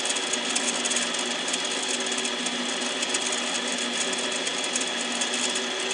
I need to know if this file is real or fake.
real